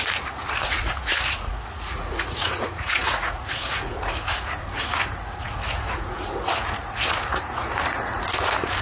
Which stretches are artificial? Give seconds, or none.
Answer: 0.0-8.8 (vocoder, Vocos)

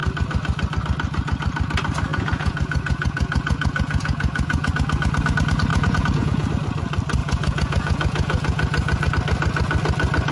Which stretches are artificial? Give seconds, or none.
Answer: 2.1-4.7 (vocoder, Vocos); 5.7-6.5; 7.2-9.1